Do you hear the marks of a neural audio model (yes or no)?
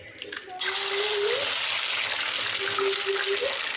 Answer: no